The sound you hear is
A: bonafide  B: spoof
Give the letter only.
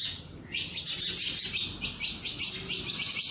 A